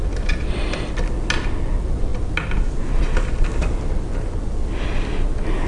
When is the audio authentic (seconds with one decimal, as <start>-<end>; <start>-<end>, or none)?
0.0-5.7